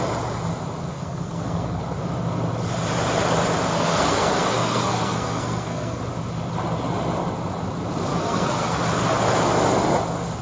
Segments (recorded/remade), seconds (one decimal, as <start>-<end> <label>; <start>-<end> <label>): 0.0-0.9 recorded; 0.9-1.8 remade; 1.8-3.7 recorded; 3.7-6.0 remade; 6.0-8.1 recorded; 8.1-8.8 remade; 8.8-10.4 recorded